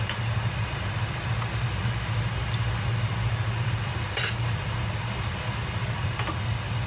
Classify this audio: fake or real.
real